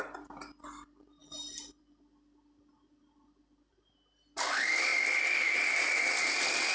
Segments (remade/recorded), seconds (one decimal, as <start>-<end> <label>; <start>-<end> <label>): 0.0-6.7 recorded